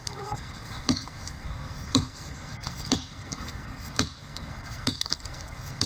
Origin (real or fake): fake